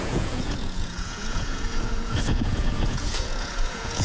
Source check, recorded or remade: remade